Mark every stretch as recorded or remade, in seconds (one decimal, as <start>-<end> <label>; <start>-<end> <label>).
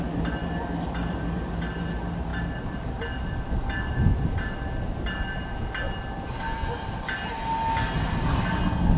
0.0-0.4 recorded; 0.4-1.5 remade; 1.5-9.0 recorded